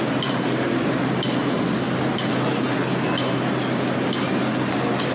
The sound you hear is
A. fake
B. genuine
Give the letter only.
B